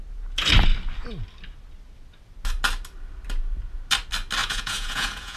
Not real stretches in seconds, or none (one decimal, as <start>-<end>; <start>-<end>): 4.4-5.4

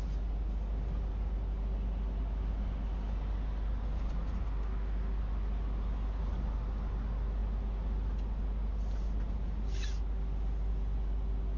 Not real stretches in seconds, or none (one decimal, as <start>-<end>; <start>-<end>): none

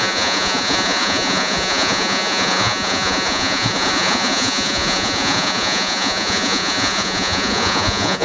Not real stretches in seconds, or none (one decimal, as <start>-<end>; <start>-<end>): 0.0-8.2